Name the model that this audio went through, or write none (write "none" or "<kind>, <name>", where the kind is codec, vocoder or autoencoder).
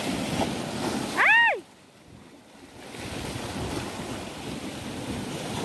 none